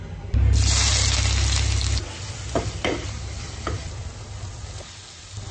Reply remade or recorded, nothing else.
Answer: recorded